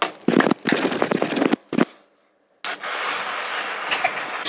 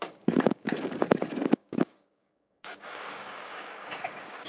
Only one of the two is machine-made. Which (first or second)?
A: second